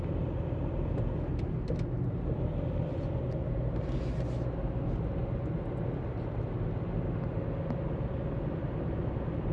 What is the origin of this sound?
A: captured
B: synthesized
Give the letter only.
A